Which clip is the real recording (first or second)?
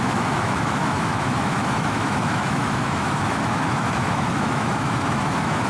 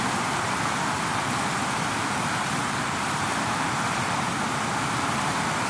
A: second